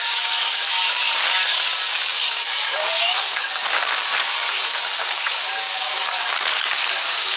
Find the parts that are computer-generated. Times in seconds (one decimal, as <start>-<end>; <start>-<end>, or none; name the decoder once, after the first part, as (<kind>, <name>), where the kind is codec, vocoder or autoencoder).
0.0-7.4 (codec, DAC)